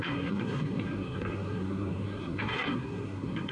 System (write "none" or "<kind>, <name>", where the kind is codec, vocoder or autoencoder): codec, SNAC